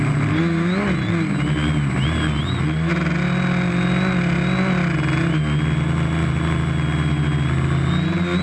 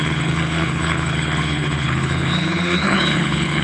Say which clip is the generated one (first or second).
second